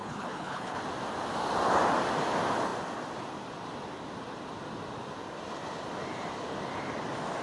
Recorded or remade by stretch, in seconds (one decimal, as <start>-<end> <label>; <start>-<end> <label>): 0.0-0.8 remade; 0.8-7.4 recorded